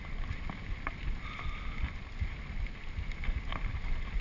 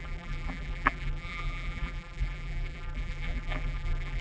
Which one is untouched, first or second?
first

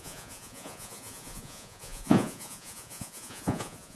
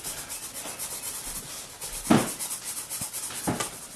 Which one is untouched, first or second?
second